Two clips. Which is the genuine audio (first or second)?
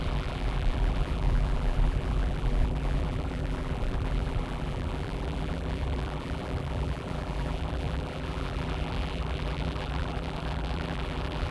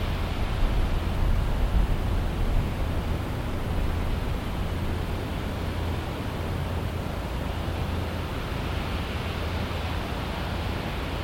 second